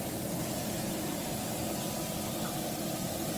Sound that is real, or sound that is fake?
fake